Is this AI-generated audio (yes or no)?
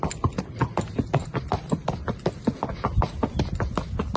no